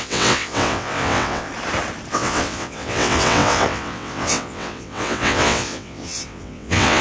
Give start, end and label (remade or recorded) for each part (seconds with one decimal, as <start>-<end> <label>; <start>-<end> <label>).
0.0-1.5 remade; 1.5-2.1 recorded; 2.1-7.0 remade